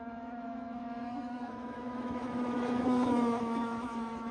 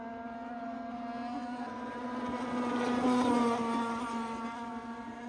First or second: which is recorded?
second